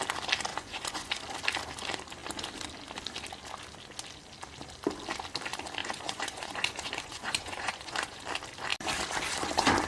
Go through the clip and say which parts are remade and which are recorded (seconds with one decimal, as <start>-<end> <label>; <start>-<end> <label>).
0.0-0.5 recorded; 0.5-1.1 remade; 1.1-5.8 recorded; 5.8-8.2 remade; 8.2-9.9 recorded